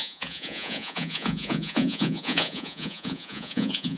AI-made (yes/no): yes